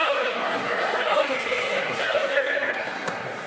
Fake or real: fake